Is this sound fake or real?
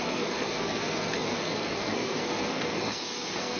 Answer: fake